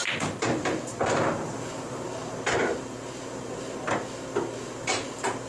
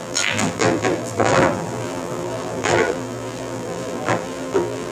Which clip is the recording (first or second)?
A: first